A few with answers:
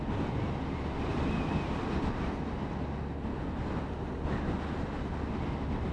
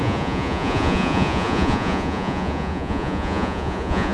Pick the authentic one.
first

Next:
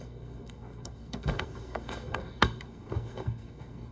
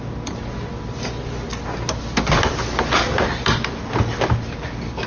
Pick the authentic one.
second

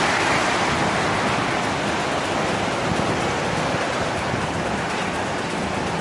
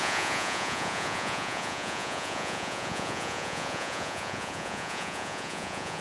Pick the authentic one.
first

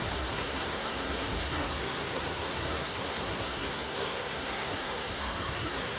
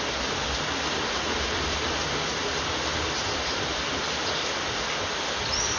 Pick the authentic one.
second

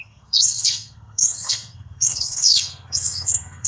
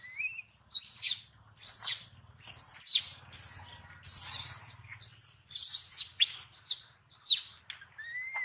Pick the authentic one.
second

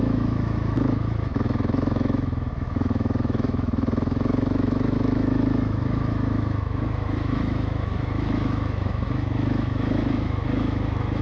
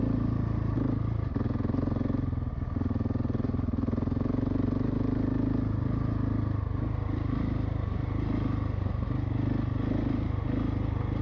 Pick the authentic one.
second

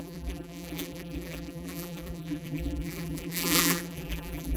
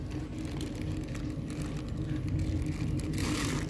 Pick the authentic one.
second